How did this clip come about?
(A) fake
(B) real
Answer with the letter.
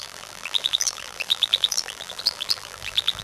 A